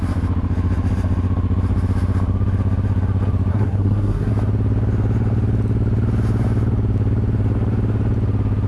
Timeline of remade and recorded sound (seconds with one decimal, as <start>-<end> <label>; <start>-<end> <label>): 0.0-3.5 recorded; 3.5-4.3 remade; 4.3-8.7 recorded